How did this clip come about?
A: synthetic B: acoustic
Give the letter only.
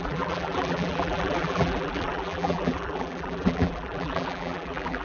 A